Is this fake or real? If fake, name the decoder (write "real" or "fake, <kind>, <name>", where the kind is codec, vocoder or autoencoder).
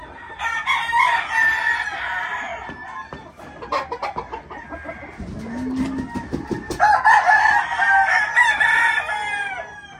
real